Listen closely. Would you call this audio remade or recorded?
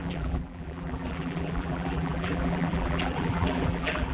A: remade